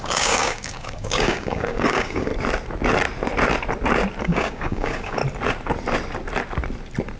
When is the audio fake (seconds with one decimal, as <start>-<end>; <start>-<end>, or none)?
0.0-2.3; 4.2-5.2